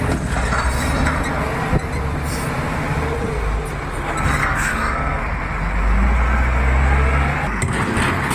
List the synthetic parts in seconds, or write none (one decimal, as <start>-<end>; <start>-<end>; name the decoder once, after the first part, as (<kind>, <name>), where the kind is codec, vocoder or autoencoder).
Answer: 4.4-5.2 (codec, SNAC)